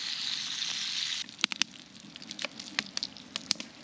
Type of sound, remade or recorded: recorded